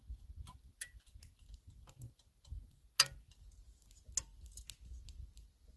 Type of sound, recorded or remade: recorded